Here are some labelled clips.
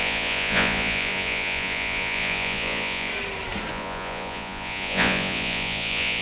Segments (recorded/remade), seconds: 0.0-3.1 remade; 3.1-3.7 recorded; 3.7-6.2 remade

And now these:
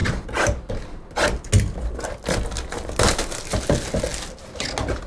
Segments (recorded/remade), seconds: 0.0-5.1 recorded

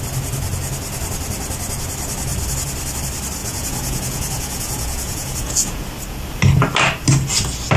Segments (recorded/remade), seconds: 0.0-3.4 recorded; 3.4-5.9 remade; 5.9-7.8 recorded